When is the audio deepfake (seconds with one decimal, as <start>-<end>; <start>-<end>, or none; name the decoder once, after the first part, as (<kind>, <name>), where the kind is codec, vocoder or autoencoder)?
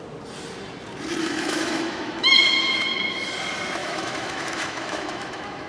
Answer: 1.2-3.3 (autoencoder, DAC-VAE); 3.8-5.7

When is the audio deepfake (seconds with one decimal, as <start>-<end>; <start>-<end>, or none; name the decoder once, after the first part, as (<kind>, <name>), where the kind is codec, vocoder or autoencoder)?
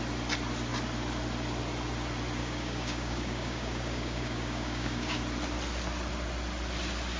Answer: 2.4-5.2 (codec, DAC)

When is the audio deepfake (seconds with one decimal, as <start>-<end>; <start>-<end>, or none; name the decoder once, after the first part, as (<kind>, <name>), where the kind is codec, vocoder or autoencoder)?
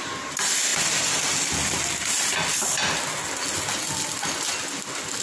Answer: none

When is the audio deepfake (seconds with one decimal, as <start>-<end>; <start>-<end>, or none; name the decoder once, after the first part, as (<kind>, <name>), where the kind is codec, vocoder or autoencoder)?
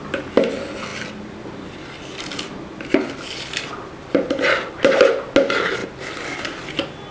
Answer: 5.8-6.4 (vocoder, BigVGAN v2)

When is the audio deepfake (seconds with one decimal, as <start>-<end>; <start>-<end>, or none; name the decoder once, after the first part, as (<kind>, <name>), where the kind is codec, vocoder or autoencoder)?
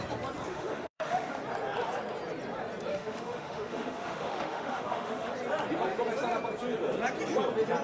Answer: 0.5-1.4 (autoencoder, DAC-VAE); 2.9-5.3